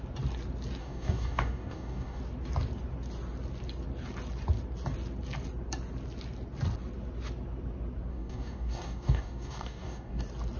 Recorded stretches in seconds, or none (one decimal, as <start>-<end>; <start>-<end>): 0.0-0.8; 2.2-8.1; 10.2-10.6